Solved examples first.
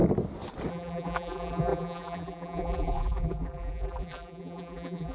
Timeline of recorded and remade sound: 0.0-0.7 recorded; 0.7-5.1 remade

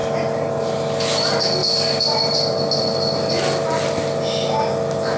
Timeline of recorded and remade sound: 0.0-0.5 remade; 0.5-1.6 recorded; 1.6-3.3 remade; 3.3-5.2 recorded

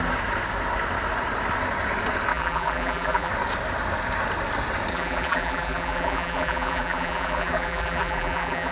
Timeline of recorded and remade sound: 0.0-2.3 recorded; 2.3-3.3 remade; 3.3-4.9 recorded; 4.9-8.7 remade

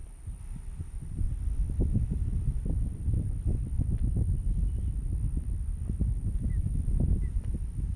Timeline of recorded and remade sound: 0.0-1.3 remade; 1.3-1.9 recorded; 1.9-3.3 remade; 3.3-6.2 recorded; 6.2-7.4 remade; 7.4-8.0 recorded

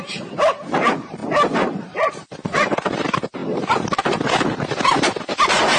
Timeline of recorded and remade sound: 0.0-5.8 remade

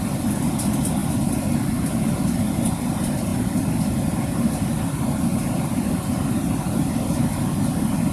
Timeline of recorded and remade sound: 0.0-5.3 recorded; 5.3-5.9 remade; 5.9-8.1 recorded